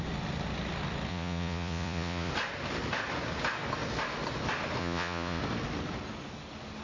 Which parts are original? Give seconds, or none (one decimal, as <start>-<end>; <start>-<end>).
0.0-1.1; 2.3-4.8; 5.4-6.8